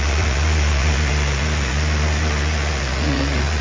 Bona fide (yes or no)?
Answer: no